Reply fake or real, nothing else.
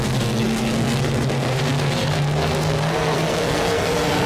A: fake